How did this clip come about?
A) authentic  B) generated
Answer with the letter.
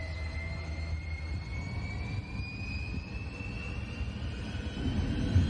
A